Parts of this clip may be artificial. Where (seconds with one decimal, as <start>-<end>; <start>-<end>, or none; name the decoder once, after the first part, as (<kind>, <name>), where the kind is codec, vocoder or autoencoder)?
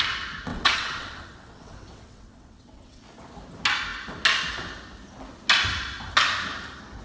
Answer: 0.5-3.0 (vocoder, WaveNeXt)